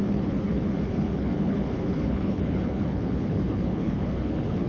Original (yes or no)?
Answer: no